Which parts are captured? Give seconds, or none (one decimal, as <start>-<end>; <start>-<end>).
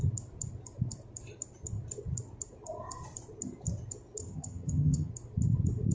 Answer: 0.0-4.2; 5.1-5.9